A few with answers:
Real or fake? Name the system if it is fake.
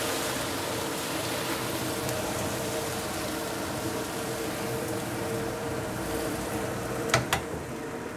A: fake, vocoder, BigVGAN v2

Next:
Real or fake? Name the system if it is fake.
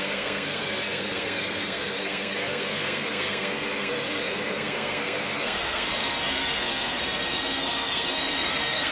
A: fake, codec, SNAC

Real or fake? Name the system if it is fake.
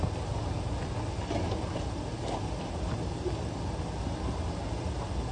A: real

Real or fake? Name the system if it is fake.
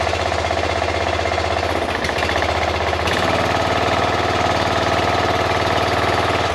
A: real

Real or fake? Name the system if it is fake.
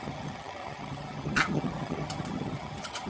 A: fake, vocoder, HiFi-GAN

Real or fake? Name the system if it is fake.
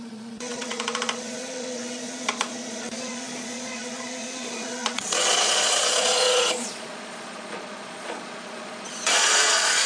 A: fake, vocoder, Vocos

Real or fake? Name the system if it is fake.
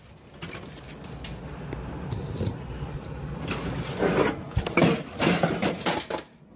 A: real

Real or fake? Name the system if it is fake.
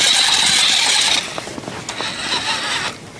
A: real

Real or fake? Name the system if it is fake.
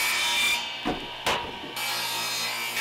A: real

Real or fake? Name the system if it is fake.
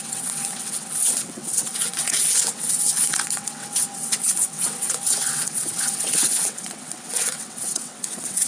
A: fake, vocoder, WaveNeXt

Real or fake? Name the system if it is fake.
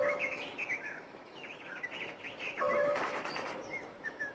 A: fake, autoencoder, DAC-VAE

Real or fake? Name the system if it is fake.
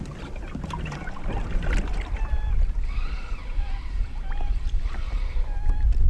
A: real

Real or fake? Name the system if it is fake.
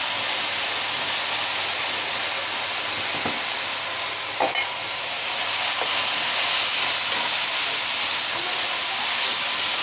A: real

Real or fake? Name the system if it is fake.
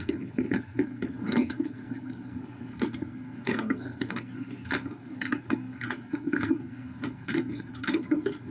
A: fake, codec, SNAC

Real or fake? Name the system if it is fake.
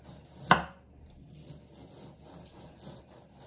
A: real